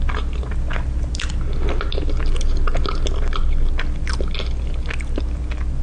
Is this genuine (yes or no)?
yes